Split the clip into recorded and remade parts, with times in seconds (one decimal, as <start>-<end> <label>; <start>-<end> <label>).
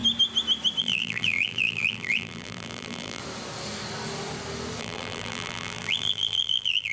0.0-0.8 recorded; 0.8-3.2 remade; 3.2-4.8 recorded; 4.8-6.9 remade